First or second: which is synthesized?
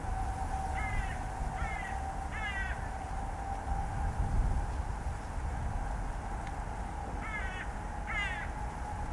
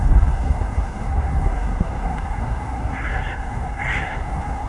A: second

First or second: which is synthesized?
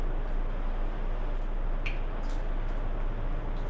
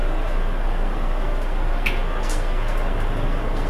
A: second